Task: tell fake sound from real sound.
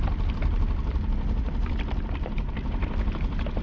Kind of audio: real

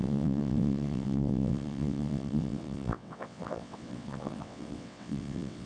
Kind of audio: fake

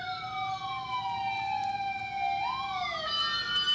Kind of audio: real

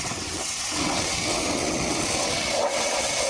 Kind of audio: fake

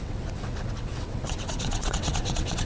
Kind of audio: fake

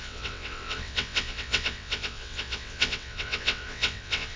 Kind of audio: fake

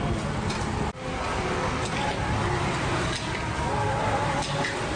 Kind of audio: real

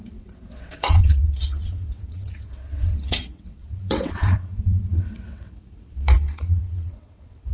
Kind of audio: fake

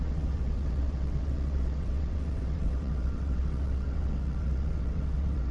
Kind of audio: fake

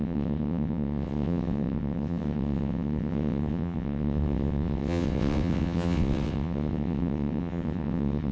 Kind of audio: fake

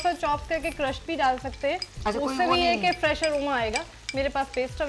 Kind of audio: real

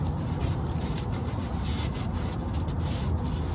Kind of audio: real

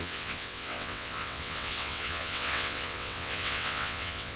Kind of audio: fake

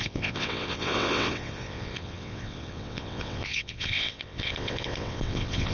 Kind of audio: fake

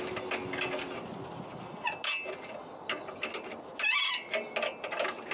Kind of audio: real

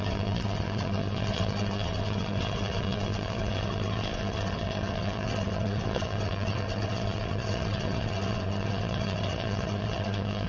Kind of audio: fake